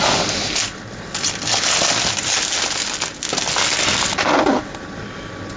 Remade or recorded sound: recorded